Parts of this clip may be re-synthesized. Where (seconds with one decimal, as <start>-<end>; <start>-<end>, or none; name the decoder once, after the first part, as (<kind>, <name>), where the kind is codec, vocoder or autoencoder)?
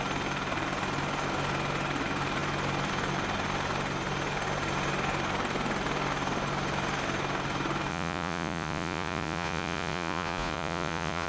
7.9-11.3 (vocoder, Vocos)